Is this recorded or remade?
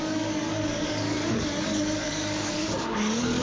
remade